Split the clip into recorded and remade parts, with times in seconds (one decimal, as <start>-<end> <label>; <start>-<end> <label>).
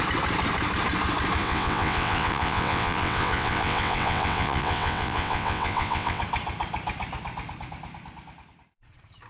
0.0-1.4 recorded; 1.4-6.2 remade; 6.2-9.3 recorded